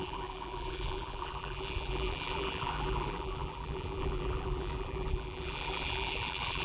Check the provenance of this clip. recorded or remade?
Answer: remade